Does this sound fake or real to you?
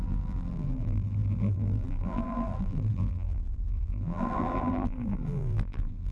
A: fake